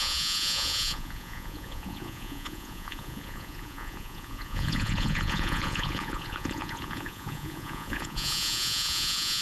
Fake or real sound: fake